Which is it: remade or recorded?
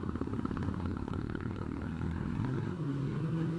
remade